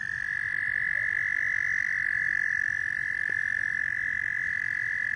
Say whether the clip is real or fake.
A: real